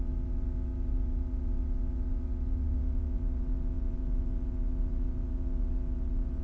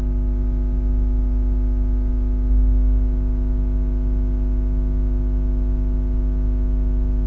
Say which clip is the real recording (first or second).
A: second